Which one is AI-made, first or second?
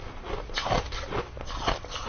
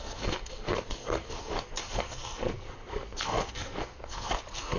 second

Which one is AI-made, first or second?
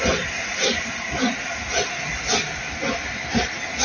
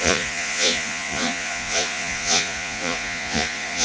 second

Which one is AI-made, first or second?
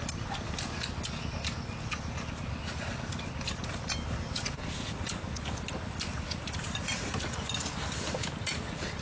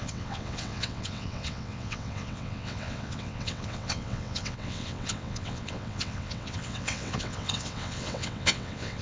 second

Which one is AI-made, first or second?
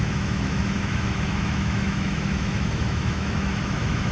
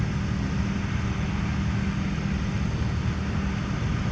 first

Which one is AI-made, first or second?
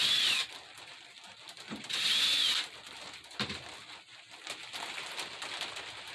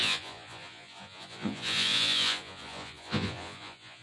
second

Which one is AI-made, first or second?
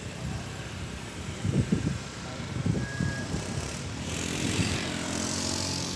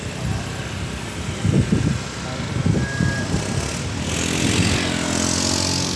first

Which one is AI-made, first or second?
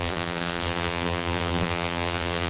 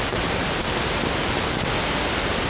first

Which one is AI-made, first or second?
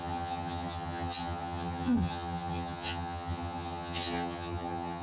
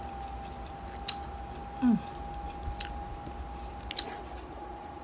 first